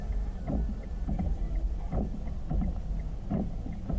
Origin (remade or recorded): recorded